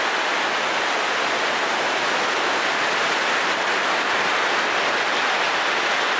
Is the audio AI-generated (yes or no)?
no